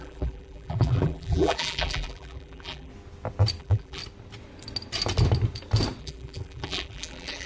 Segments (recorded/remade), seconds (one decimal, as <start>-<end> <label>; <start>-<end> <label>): 0.0-2.9 remade; 2.9-3.6 recorded; 3.6-4.0 remade; 4.0-6.0 recorded; 6.0-7.5 remade